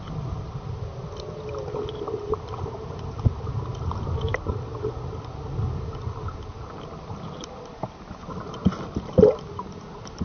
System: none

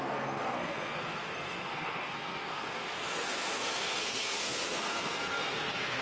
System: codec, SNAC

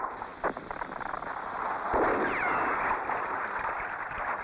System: none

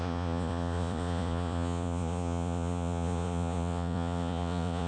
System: vocoder, Vocos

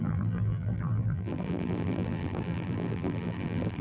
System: vocoder, BigVGAN v2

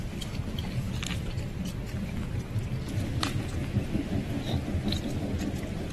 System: none